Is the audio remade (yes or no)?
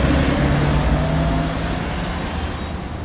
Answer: no